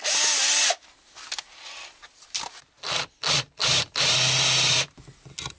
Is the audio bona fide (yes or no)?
yes